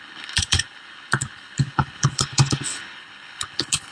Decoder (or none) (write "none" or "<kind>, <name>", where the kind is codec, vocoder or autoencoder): codec, HILCodec